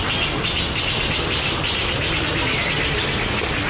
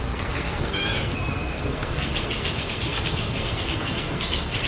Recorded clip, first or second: first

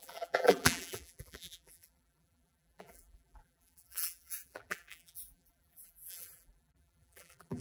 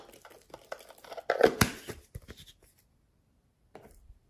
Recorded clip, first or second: second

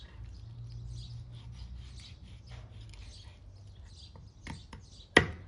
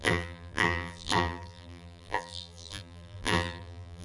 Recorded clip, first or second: first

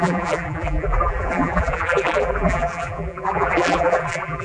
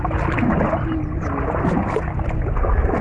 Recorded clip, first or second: second